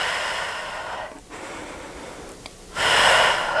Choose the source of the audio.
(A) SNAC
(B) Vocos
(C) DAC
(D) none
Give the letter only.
D